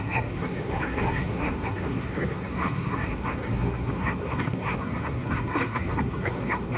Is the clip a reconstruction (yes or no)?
yes